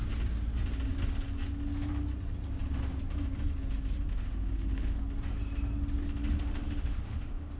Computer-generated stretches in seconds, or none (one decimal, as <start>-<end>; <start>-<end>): 4.1-5.0; 6.2-7.6